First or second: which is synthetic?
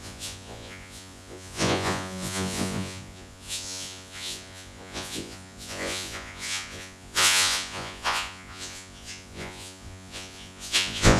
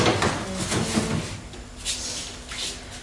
first